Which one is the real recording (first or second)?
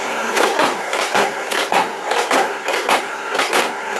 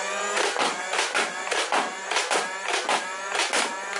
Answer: second